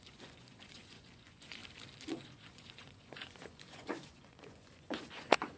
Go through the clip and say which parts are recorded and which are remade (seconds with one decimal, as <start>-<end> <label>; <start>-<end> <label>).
0.0-1.6 remade; 1.6-2.1 recorded; 2.1-5.6 remade